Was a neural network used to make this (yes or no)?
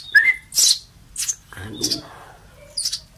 no